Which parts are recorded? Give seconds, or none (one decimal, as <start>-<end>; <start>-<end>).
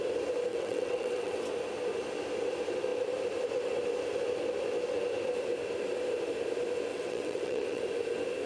0.0-0.5; 1.4-6.9; 7.8-8.5